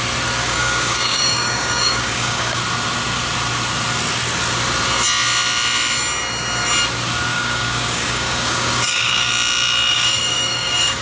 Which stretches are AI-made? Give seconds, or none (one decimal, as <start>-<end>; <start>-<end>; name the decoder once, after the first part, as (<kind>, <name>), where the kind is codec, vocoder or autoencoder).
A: 0.4-2.6 (codec, DAC); 7.3-9.3; 9.9-11.0